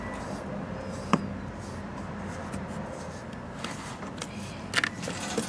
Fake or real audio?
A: real